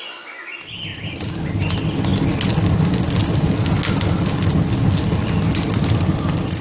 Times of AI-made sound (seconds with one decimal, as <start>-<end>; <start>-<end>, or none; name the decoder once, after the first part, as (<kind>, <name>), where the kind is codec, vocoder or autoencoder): none